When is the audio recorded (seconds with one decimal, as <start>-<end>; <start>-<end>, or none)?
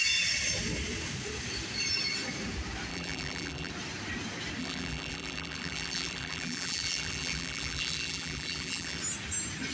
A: 0.0-2.9; 3.7-4.6; 9.0-9.7